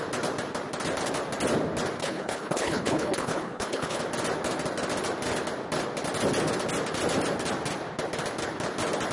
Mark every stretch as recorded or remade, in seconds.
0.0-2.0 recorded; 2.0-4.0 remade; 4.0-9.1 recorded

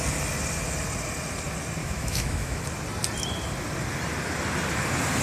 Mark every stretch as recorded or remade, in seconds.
0.0-1.8 recorded; 1.8-2.6 remade; 2.6-5.2 recorded